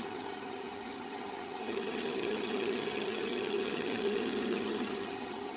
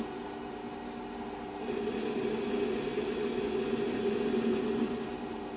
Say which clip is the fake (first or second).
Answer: first